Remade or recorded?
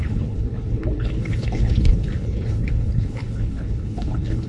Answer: remade